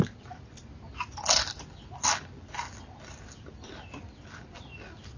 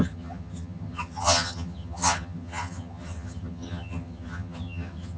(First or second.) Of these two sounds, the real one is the first